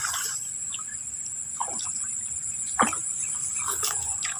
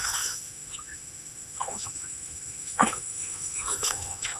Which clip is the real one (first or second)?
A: first